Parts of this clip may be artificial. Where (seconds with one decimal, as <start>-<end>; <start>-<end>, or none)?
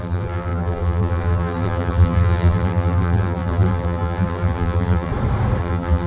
0.0-5.1; 5.6-6.1